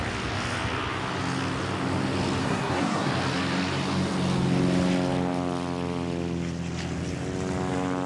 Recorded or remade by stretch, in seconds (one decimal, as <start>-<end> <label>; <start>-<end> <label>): 0.0-2.4 recorded; 2.4-3.1 remade; 3.1-8.1 recorded